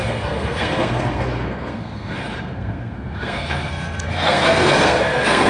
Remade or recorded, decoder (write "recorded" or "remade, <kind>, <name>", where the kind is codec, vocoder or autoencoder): remade, codec, SNAC